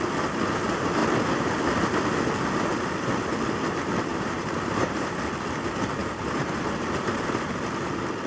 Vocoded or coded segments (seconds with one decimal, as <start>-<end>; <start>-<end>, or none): 4.1-5.2; 6.0-6.5